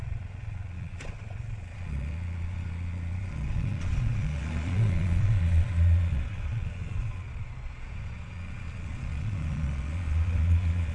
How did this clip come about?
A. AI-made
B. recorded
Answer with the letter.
A